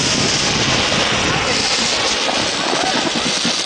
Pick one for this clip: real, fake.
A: real